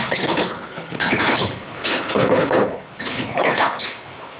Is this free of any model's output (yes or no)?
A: no